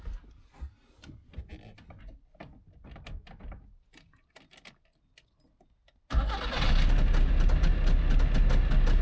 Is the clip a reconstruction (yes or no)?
no